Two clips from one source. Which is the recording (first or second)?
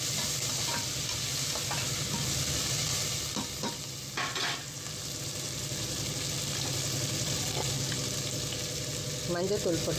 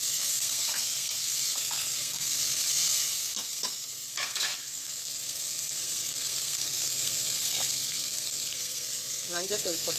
first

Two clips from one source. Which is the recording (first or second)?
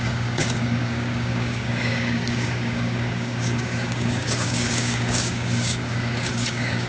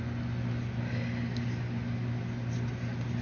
second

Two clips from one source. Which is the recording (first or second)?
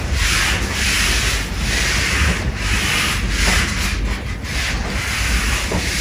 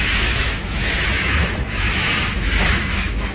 first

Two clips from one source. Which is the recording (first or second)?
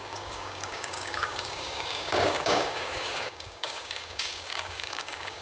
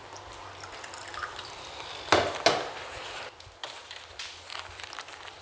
second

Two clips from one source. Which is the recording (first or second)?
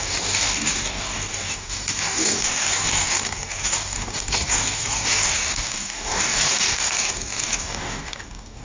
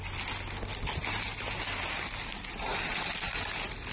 second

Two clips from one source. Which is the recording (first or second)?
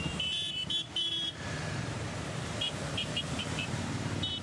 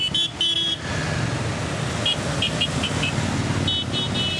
second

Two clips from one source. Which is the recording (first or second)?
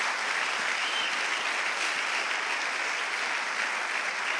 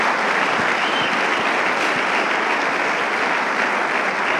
second